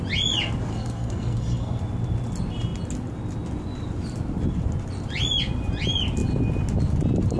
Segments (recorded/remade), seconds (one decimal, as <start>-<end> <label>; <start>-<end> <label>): 0.0-0.7 recorded; 0.7-1.8 remade; 1.8-7.4 recorded